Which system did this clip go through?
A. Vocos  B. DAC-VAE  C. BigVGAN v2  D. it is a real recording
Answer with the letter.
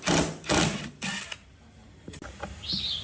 D